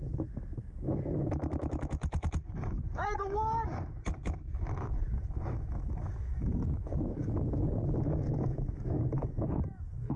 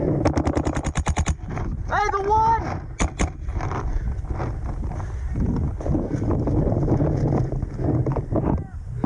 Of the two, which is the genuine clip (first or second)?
second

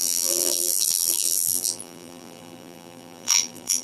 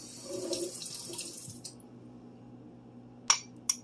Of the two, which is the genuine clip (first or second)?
second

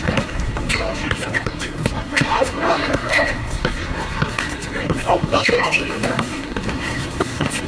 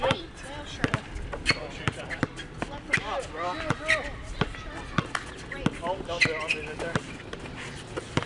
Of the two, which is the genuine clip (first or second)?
second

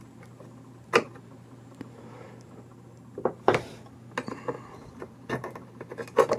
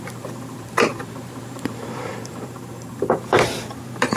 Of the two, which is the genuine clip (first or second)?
first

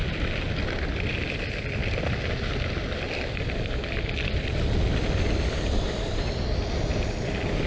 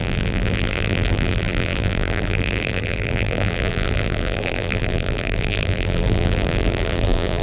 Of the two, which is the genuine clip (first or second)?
first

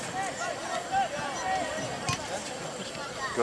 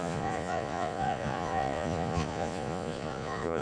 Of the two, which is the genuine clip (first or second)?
first